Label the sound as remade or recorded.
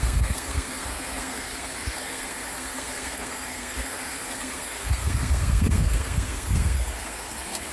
remade